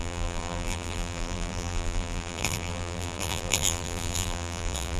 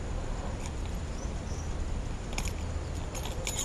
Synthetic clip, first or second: first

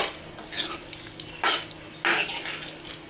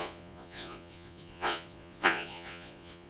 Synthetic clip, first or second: second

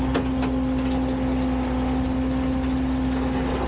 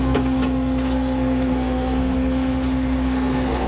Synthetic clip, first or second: second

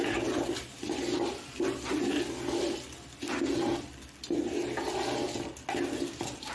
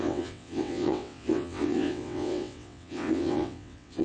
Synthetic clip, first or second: second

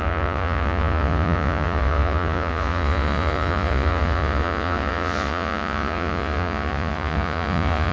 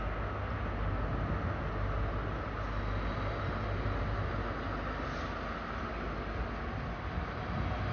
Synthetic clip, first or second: first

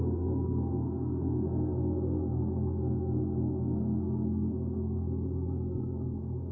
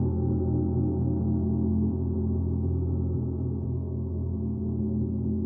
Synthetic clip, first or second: first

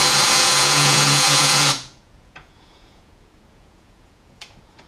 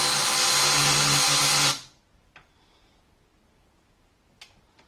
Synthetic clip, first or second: first